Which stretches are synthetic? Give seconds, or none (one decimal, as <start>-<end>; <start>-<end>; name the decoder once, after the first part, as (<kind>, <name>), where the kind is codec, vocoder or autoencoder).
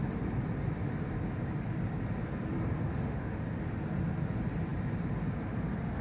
2.9-3.4 (autoencoder, DAC-VAE)